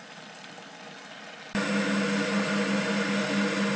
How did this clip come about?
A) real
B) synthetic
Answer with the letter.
A